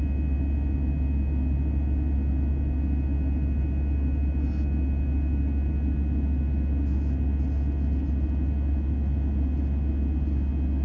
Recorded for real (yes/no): yes